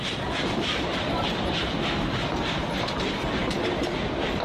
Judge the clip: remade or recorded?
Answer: remade